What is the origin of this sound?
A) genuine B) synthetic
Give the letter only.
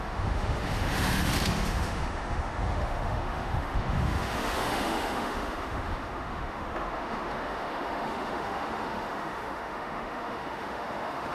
B